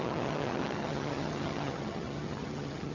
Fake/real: fake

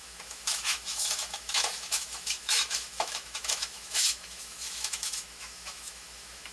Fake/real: fake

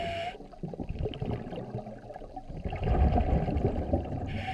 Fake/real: real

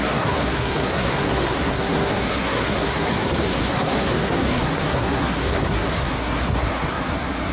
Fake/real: fake